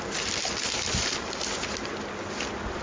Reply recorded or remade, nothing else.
recorded